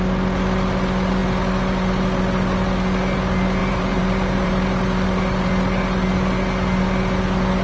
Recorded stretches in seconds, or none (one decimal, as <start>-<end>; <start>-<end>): 0.0-3.6; 4.5-7.6